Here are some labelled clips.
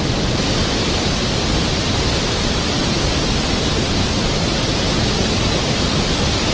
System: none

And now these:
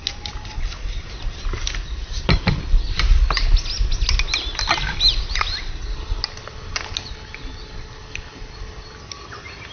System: none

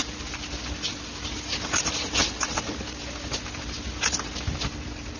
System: none